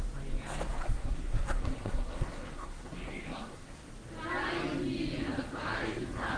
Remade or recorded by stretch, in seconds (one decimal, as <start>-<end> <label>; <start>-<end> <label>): 0.0-0.7 recorded; 0.7-3.9 remade; 3.9-5.2 recorded; 5.2-6.4 remade

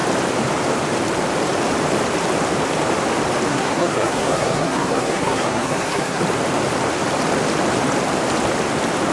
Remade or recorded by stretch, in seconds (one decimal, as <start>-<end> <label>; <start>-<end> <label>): 0.0-3.5 recorded; 3.5-6.2 remade; 6.2-9.1 recorded

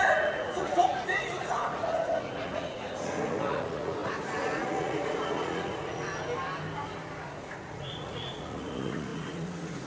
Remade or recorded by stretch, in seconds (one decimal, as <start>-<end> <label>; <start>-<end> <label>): 0.0-6.1 remade; 6.1-7.2 recorded; 7.2-9.9 remade

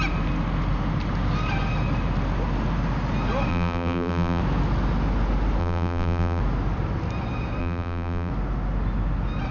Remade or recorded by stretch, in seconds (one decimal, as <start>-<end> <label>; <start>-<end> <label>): 0.0-3.5 recorded; 3.5-4.4 remade; 4.4-5.6 recorded; 5.6-6.4 remade; 6.4-7.6 recorded; 7.6-8.3 remade; 8.3-9.5 recorded

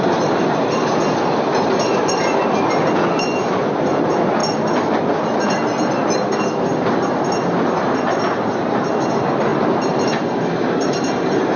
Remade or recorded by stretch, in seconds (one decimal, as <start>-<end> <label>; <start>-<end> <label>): 0.0-11.6 recorded

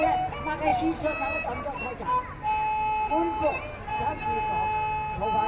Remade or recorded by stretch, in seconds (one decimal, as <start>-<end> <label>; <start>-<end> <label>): 0.0-5.5 recorded

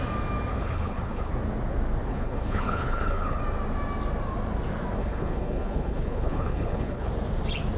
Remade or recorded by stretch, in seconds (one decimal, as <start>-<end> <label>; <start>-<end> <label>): 0.0-0.5 recorded; 0.5-1.3 remade; 1.3-2.1 recorded; 2.1-3.4 remade; 3.4-5.0 recorded; 5.0-7.1 remade; 7.1-7.8 recorded

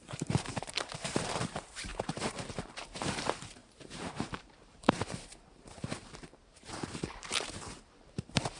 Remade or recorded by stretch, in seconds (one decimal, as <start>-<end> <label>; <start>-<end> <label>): 0.0-8.6 remade